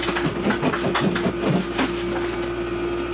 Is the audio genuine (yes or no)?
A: yes